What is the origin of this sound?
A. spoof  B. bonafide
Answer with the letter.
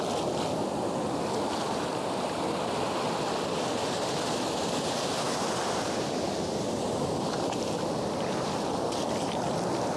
B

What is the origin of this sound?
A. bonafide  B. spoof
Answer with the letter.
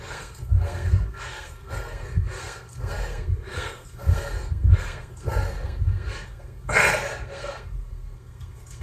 B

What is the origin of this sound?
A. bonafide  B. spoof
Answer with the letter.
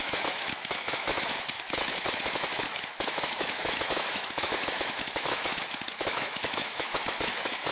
B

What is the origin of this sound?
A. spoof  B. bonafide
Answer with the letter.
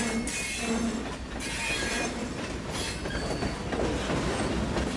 B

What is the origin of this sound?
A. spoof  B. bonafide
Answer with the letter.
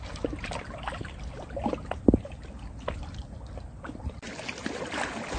B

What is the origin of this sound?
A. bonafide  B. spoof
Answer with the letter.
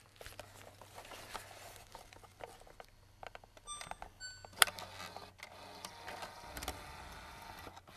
A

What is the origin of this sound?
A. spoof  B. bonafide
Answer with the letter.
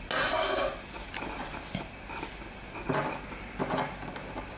B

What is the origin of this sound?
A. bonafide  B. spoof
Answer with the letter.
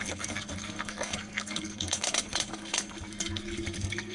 B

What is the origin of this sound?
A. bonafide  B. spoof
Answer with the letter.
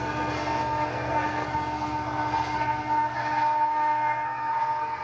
B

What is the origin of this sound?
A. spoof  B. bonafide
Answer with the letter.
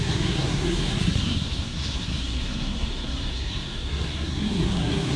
A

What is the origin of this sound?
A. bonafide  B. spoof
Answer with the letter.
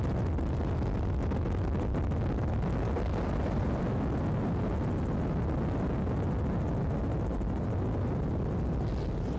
A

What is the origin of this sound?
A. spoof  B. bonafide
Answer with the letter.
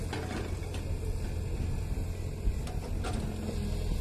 B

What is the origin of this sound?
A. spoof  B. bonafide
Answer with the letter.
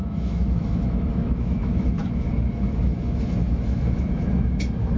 A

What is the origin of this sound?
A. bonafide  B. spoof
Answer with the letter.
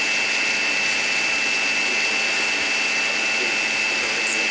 A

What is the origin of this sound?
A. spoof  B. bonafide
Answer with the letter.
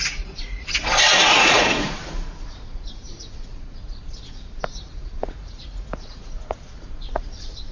A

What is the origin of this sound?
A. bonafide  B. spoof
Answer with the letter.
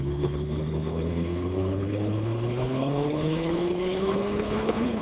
B